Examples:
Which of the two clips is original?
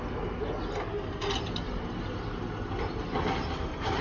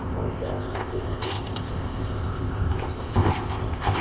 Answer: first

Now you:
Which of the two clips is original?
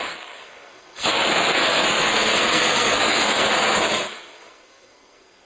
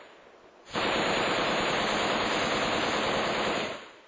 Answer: second